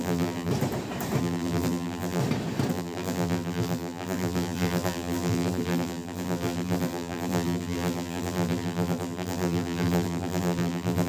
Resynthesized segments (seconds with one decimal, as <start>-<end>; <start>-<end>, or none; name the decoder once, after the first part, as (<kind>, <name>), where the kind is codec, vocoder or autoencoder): 0.0-0.5 (vocoder, BigVGAN v2); 1.2-2.2; 2.7-11.1